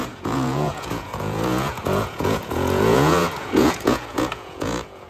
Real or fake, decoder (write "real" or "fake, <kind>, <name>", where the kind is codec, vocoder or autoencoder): fake, vocoder, Vocos